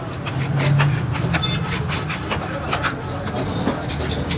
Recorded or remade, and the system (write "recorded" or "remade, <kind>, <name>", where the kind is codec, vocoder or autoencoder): recorded